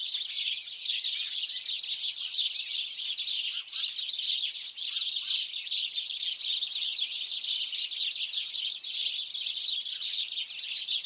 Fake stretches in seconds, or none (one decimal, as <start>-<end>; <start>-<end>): none